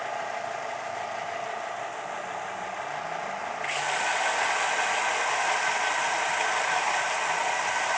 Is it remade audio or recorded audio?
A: recorded